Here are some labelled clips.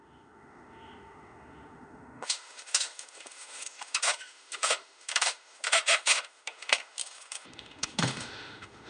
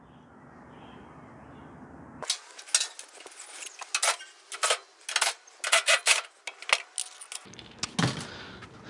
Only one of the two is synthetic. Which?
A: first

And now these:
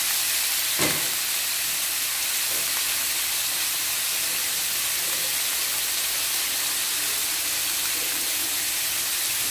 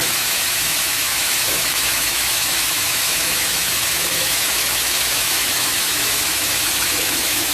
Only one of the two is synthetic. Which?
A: second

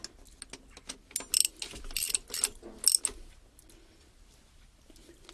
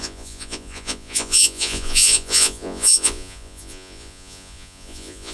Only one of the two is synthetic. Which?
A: second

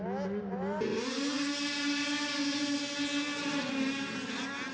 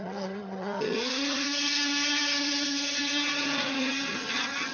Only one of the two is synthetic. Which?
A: second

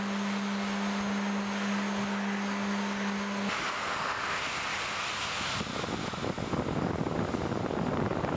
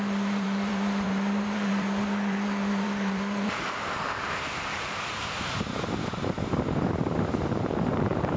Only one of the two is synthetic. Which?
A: second